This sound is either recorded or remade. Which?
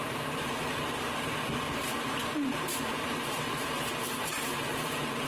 remade